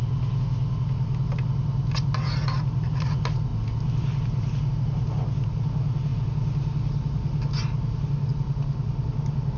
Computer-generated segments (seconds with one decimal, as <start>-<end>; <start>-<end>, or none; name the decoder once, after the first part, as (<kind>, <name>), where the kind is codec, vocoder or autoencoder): none

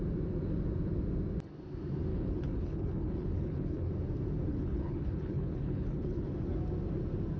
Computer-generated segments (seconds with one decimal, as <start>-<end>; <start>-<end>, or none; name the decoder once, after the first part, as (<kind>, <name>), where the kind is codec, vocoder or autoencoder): 2.1-3.9 (codec, HILCodec); 4.5-6.3

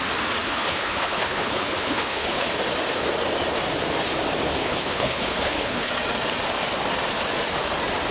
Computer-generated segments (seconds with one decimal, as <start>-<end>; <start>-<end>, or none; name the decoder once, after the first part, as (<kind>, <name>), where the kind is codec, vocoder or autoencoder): 0.4-2.5 (codec, HILCodec); 4.6-5.9